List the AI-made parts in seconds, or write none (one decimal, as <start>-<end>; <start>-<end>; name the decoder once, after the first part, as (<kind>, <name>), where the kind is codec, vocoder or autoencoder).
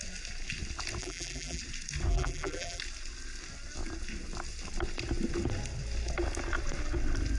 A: 1.0-1.6 (vocoder, BigVGAN v2); 2.1-2.8